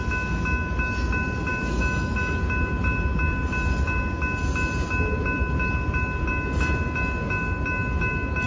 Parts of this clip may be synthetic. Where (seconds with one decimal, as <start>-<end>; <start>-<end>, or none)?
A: 1.5-2.4